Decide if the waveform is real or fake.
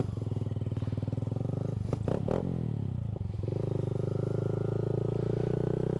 real